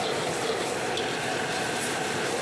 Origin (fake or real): real